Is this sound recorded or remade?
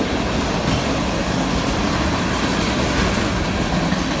recorded